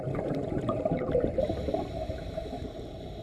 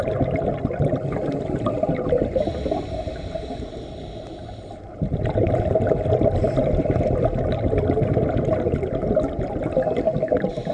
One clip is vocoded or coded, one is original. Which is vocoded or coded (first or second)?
first